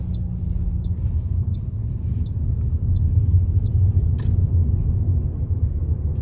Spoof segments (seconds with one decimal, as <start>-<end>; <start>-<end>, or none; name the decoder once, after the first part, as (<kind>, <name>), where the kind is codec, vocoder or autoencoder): none